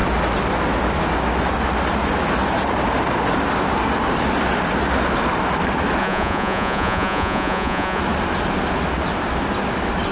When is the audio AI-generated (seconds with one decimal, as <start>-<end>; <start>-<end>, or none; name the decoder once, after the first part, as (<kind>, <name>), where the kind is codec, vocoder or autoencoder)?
6.0-8.0 (vocoder, Vocos)